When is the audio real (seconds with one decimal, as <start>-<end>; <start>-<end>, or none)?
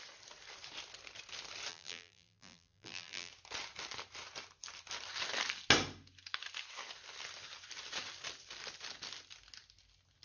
0.0-1.7; 3.3-10.2